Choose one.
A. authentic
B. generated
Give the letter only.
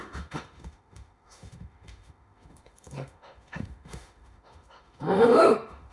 B